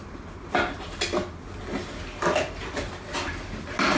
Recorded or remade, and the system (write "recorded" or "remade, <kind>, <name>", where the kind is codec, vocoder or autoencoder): recorded